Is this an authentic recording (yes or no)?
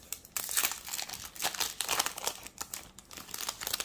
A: yes